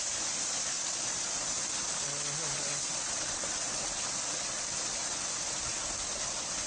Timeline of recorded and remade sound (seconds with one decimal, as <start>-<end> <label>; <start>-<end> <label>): 0.0-6.7 recorded